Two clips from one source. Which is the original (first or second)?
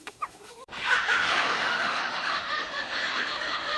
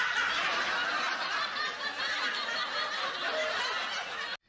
second